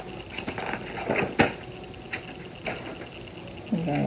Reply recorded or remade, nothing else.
recorded